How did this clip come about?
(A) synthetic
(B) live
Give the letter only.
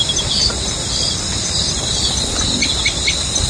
B